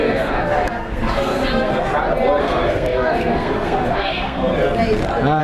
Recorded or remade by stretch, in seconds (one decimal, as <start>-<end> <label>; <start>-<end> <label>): 0.0-1.9 remade; 1.9-2.4 recorded; 2.4-4.5 remade; 4.5-5.4 recorded